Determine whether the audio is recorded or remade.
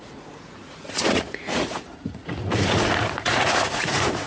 remade